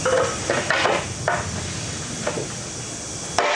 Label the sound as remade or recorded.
recorded